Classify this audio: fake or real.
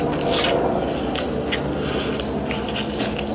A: real